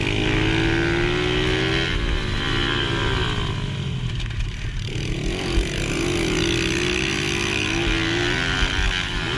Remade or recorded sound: recorded